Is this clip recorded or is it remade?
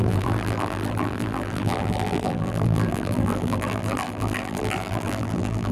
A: remade